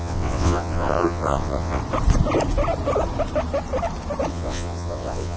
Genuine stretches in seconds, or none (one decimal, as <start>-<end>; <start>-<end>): 1.8-4.3